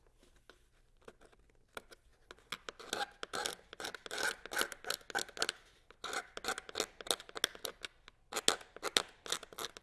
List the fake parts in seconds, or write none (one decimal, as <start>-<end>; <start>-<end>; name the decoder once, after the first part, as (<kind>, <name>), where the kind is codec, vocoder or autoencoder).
none